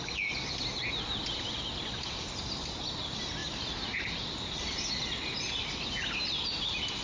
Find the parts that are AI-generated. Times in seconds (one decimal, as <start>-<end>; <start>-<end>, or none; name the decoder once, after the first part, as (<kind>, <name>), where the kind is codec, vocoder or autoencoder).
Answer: none